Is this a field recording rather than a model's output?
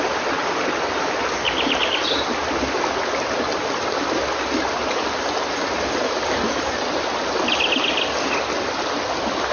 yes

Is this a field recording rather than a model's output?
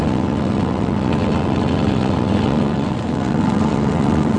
no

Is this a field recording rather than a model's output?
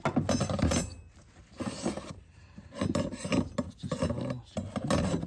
yes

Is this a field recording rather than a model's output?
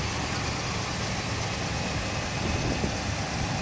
yes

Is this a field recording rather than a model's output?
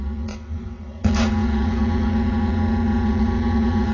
no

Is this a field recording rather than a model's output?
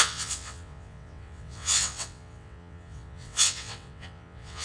no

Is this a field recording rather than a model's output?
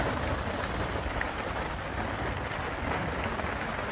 yes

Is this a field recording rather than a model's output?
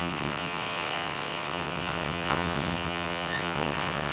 no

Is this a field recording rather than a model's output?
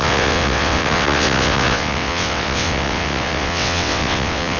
no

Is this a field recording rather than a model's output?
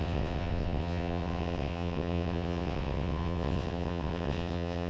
no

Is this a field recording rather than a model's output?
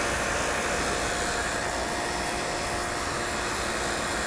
yes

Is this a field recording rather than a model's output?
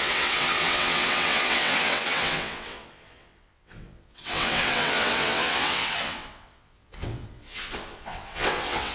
no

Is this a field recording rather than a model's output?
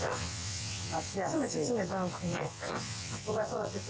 no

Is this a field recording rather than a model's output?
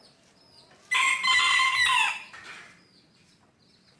yes